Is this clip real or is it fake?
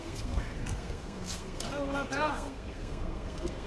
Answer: fake